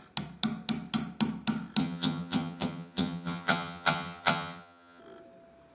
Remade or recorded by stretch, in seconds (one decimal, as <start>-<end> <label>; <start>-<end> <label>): 0.0-1.8 recorded; 1.8-5.0 remade; 5.0-5.7 recorded